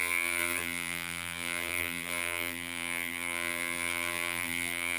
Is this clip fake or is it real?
fake